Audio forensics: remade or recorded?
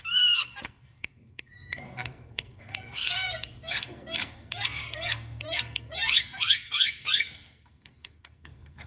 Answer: remade